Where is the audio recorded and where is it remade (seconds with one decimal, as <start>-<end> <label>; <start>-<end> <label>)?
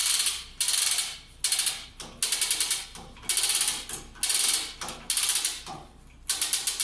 0.0-6.8 recorded